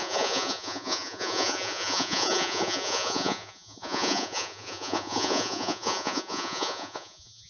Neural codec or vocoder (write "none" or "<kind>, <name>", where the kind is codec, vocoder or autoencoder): vocoder, Vocos